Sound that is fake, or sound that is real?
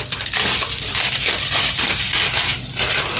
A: real